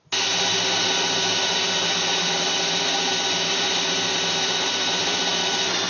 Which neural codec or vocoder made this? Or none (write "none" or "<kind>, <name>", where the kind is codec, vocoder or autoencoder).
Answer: none